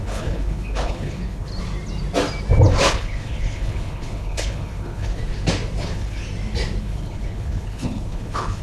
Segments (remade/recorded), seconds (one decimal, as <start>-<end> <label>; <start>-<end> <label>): 0.0-1.5 remade; 1.5-2.9 recorded; 2.9-5.2 remade; 5.2-5.8 recorded; 5.8-6.2 remade; 6.2-6.8 recorded; 6.8-8.6 remade